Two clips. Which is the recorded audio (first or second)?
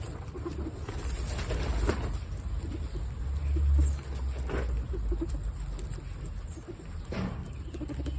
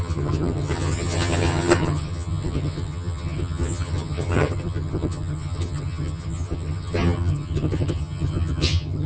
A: first